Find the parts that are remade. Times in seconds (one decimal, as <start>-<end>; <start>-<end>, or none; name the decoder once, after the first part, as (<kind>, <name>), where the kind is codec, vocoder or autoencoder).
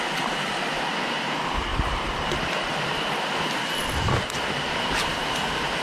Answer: none